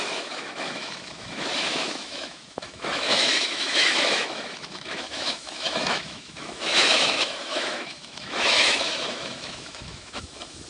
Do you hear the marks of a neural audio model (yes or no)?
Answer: yes